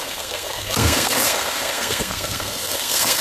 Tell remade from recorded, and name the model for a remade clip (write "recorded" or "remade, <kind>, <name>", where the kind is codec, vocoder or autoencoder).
remade, codec, SNAC